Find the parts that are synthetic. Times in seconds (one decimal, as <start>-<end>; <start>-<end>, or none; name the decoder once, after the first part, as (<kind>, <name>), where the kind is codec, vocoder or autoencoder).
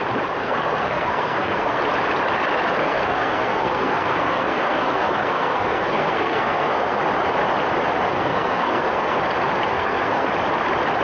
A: 0.4-1.8 (codec, SNAC); 2.8-7.0; 8.1-9.2; 9.7-10.3